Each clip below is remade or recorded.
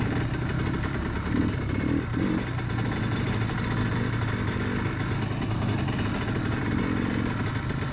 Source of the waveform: recorded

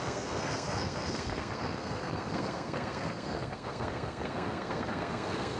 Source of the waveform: remade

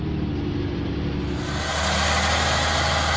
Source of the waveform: recorded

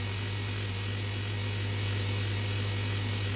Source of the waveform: recorded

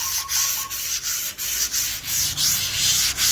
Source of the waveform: recorded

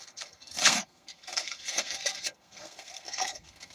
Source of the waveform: remade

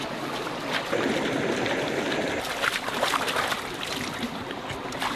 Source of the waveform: recorded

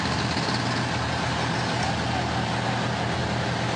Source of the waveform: recorded